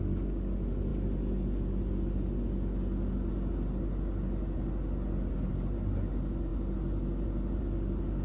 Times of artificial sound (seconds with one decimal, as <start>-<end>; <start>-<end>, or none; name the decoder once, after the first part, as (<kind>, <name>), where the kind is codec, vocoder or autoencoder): none